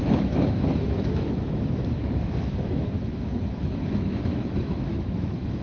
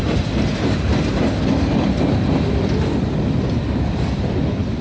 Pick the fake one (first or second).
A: first